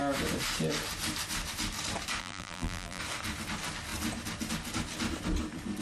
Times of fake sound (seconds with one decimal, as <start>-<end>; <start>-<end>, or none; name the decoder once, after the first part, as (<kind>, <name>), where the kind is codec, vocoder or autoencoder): 2.2-3.0 (vocoder, BigVGAN v2)